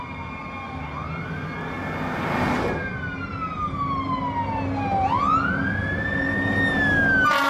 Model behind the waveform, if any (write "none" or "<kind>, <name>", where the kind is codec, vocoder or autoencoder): none